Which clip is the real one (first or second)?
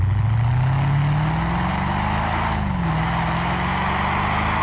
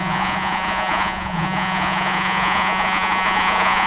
first